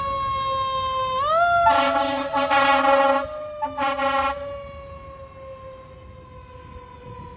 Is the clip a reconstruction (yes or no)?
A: no